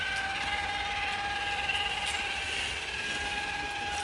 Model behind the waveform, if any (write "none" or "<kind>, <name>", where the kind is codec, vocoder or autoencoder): none